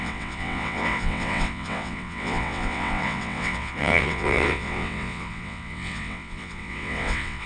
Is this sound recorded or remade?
remade